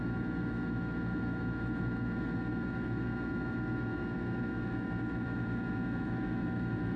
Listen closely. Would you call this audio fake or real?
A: fake